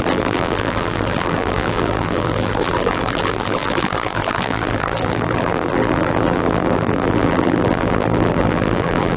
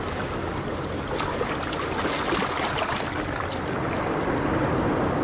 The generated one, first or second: first